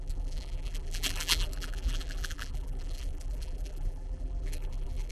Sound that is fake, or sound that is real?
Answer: fake